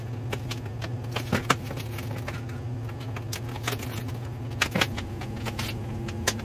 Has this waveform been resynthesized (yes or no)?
no